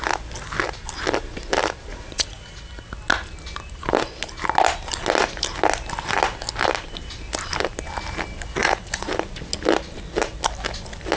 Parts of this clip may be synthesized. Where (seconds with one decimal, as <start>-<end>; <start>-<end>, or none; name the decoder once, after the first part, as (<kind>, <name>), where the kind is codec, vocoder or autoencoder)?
1.9-2.6 (vocoder, Vocos); 8.6-9.1

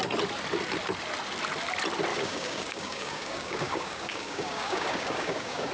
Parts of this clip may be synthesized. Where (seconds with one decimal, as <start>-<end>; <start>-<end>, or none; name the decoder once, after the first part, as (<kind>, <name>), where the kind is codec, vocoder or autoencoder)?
2.1-5.7 (codec, DAC)